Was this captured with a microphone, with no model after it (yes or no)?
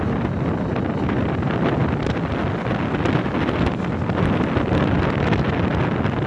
yes